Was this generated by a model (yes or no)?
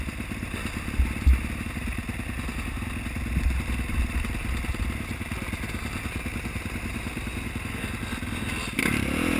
no